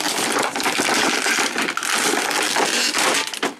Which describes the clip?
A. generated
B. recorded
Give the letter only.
B